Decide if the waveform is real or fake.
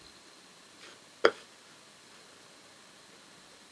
real